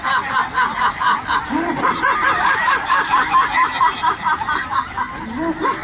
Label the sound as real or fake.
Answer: real